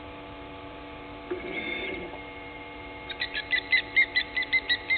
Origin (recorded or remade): remade